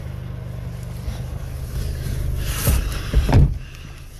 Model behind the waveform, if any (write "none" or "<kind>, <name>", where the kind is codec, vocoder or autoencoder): vocoder, BigVGAN v2